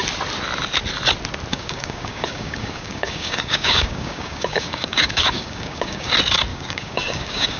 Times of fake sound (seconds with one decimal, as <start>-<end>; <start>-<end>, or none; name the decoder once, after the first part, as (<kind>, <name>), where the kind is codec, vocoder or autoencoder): 1.5-6.1 (codec, DAC); 6.5-7.6